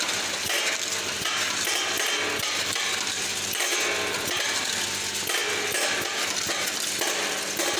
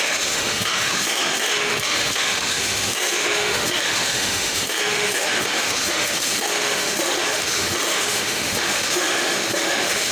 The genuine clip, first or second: first